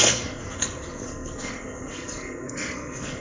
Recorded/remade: remade